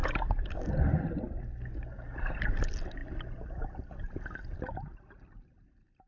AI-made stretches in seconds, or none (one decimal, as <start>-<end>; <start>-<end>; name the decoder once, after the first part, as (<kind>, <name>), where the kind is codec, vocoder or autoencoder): none